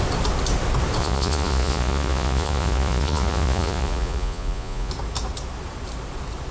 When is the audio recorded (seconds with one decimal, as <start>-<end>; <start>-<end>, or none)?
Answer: 0.0-1.0; 4.9-6.5